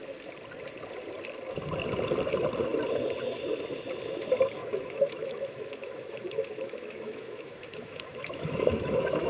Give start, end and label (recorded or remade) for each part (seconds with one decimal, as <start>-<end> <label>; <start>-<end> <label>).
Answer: 0.0-4.6 recorded; 4.6-9.3 remade